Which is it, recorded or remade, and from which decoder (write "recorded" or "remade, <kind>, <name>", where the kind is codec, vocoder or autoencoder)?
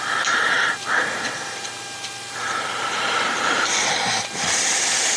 remade, vocoder, BigVGAN v2